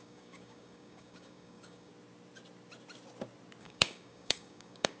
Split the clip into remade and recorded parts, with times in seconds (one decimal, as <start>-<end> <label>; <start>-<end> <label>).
0.0-1.9 remade; 1.9-3.6 recorded; 3.6-5.0 remade